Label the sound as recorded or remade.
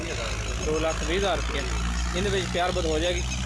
recorded